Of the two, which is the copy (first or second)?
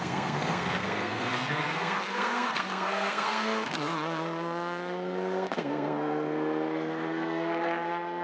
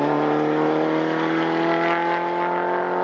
first